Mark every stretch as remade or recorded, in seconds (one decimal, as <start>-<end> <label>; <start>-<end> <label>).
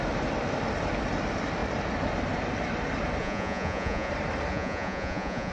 0.0-3.2 recorded; 3.2-4.1 remade; 4.1-4.5 recorded; 4.5-5.5 remade